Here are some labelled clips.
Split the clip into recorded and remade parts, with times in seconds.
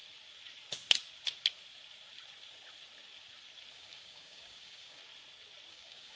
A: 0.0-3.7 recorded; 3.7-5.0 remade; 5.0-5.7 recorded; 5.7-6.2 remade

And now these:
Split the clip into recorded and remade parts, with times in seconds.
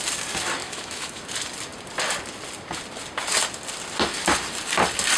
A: 0.0-0.6 recorded; 0.6-1.2 remade; 1.2-5.2 recorded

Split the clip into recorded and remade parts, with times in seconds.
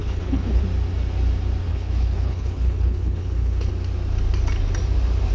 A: 0.0-0.6 remade; 0.6-1.7 recorded; 1.7-3.7 remade; 3.7-5.3 recorded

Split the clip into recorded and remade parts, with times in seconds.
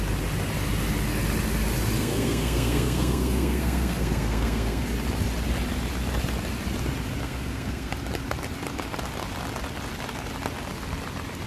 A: 0.0-2.0 recorded; 2.0-4.8 remade; 4.8-7.2 recorded; 7.2-7.9 remade; 7.9-11.5 recorded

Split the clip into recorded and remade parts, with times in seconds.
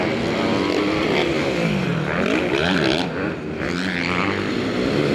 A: 0.0-5.1 recorded